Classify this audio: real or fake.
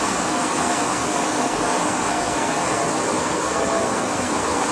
fake